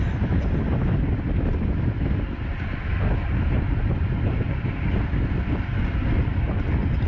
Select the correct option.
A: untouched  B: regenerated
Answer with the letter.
A